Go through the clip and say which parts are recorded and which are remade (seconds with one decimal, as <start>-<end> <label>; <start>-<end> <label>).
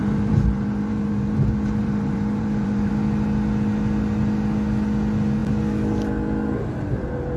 0.0-2.9 remade; 2.9-7.4 recorded